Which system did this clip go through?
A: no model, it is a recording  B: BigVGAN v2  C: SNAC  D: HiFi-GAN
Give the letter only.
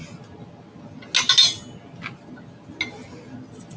A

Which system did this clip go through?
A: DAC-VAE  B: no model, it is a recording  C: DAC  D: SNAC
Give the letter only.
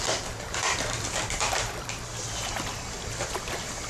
B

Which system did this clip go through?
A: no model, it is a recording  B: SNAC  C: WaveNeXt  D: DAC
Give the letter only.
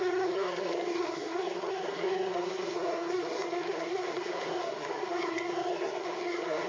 B